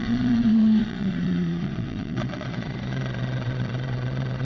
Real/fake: fake